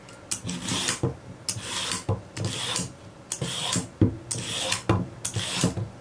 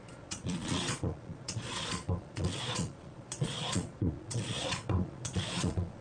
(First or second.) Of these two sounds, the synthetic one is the second